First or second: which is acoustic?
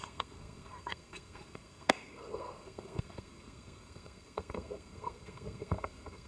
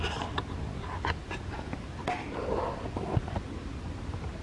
second